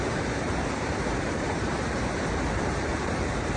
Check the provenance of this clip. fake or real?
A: fake